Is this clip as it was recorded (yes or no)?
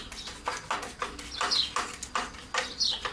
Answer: yes